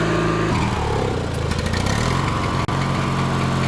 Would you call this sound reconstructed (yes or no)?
no